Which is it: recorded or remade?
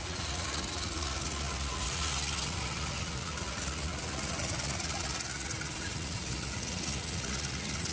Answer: remade